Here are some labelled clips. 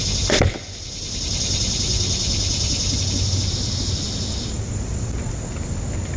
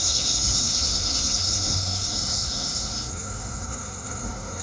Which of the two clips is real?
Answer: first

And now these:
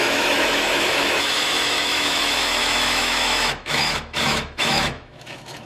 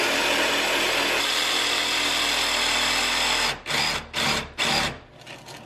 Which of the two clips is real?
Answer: second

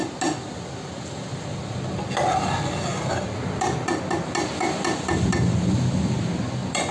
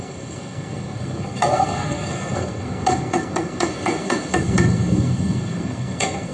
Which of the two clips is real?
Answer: first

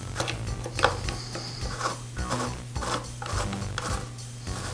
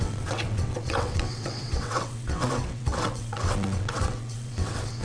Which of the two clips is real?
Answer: first